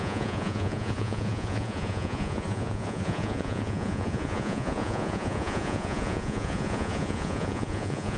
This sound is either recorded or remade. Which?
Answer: remade